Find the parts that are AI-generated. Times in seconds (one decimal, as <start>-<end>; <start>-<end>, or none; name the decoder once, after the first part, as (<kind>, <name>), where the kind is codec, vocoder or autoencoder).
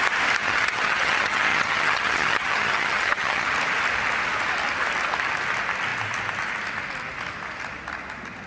0.4-3.5 (vocoder, HiFi-GAN)